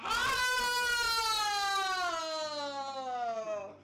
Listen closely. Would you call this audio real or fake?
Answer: real